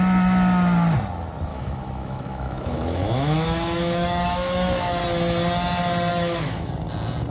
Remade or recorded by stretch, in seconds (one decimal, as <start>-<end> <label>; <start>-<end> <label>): 0.0-1.5 recorded; 1.5-5.0 remade; 5.0-6.1 recorded; 6.1-6.7 remade; 6.7-7.3 recorded

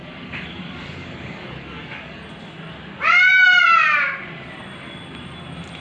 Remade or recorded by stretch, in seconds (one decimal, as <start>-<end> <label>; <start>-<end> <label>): 0.0-2.3 remade; 2.3-5.8 recorded

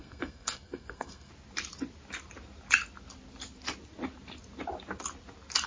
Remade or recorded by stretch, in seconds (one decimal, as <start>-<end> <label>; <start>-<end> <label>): 0.0-1.3 remade; 1.3-5.7 recorded

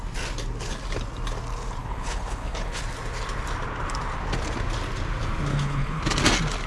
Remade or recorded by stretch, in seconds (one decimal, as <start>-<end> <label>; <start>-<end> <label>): 0.0-1.8 recorded; 1.8-2.8 remade; 2.8-5.5 recorded; 5.5-6.0 remade; 6.0-6.7 recorded